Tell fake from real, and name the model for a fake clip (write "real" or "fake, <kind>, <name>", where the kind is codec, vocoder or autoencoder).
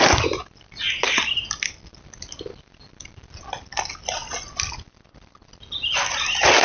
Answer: real